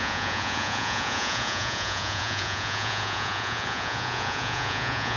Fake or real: fake